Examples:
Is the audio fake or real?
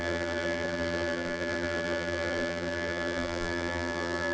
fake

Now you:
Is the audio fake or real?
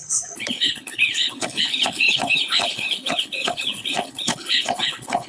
fake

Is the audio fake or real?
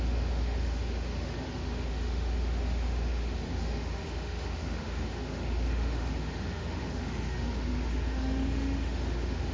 fake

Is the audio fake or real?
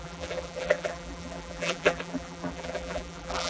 fake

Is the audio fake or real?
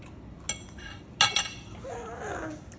real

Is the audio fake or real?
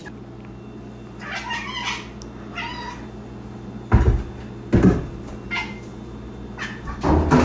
real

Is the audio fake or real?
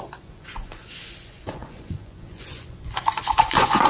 fake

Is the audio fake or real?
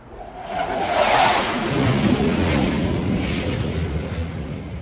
fake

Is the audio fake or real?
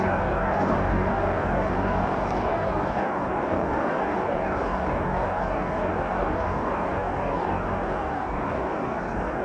fake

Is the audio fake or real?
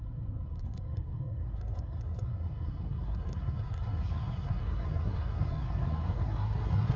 fake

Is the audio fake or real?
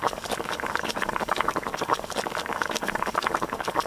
fake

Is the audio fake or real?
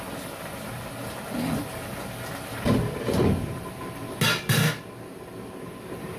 real